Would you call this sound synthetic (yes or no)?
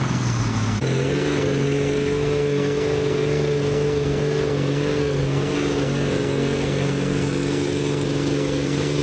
yes